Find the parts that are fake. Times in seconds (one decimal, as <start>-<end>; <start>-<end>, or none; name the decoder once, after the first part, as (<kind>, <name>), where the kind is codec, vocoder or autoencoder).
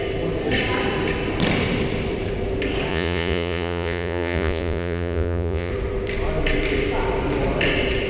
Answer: 2.9-5.7 (vocoder, Vocos)